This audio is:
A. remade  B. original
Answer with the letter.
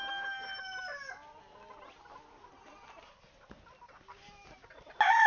B